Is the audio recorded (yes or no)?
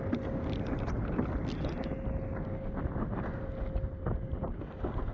yes